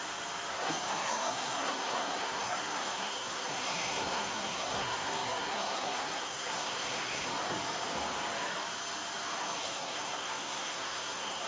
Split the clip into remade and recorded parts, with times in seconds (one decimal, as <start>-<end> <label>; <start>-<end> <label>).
0.0-0.5 recorded; 0.5-7.3 remade; 7.3-9.6 recorded; 9.6-11.5 remade